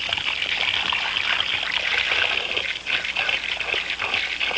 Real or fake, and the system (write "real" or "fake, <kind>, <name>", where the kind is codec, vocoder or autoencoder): real